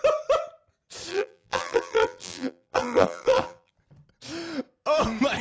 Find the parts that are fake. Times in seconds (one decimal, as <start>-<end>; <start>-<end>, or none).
1.1-3.7